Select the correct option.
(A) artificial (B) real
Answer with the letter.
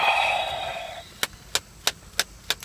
B